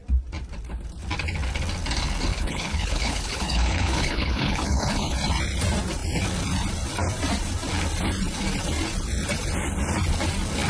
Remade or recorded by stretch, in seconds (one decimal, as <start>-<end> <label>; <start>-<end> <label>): 0.0-2.3 recorded; 2.3-5.1 remade; 5.1-10.7 recorded